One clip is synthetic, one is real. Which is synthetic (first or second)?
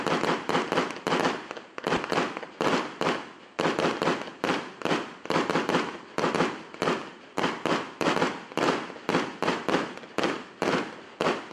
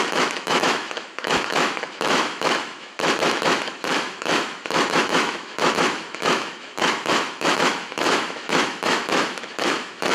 second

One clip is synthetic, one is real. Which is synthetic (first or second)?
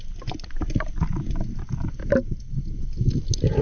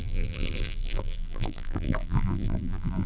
second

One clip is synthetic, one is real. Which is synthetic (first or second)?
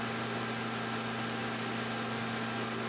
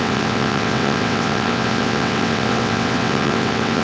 second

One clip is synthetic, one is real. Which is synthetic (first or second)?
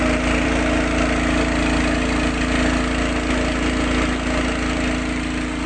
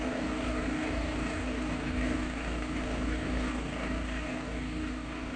second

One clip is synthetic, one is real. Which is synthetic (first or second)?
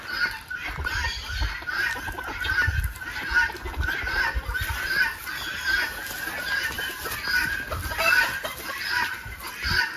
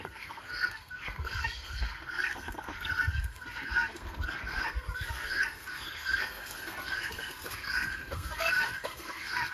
second